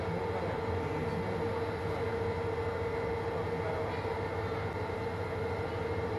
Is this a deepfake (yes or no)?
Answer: no